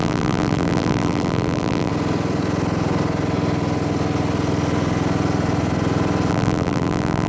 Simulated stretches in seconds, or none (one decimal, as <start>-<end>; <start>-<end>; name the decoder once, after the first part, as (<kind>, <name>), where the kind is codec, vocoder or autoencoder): 0.0-1.9 (vocoder, BigVGAN v2); 6.3-7.3